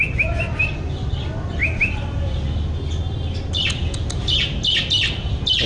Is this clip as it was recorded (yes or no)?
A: yes